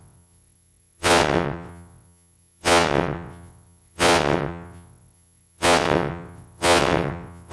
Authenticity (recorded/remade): remade